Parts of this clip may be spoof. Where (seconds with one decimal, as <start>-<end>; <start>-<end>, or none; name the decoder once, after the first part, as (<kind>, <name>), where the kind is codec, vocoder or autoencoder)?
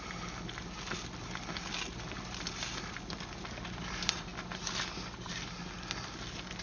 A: none